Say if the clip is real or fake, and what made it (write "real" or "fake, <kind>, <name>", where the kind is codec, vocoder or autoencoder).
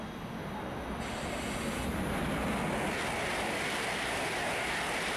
real